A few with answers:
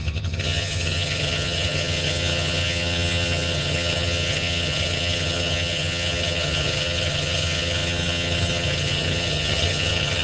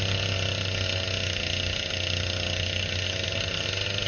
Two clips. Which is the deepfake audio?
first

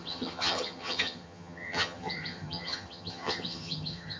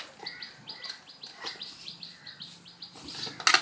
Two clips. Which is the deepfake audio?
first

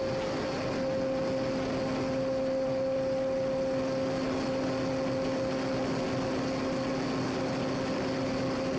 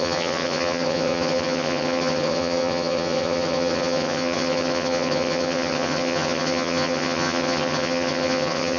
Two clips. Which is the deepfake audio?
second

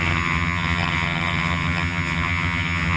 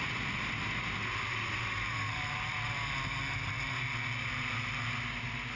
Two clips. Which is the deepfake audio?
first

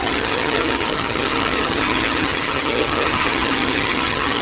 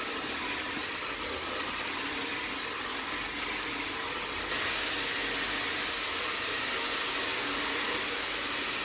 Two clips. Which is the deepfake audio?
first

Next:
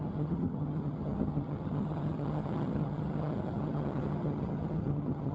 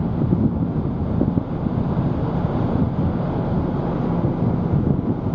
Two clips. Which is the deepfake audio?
first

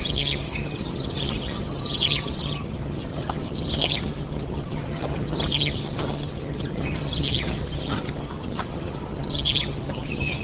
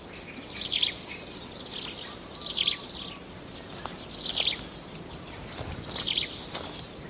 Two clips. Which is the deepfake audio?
first